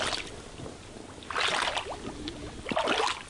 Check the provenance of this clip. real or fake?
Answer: real